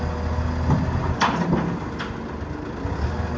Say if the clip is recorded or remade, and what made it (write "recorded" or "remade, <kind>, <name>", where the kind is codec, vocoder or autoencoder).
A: recorded